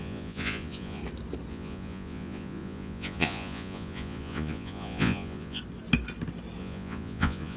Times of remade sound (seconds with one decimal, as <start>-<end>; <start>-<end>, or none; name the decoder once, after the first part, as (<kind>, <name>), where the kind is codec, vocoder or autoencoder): 0.0-1.0 (vocoder, Vocos); 1.5-5.6; 6.6-7.6